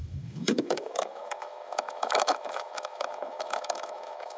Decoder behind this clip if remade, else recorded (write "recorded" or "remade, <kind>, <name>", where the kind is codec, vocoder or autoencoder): remade, autoencoder, DAC-VAE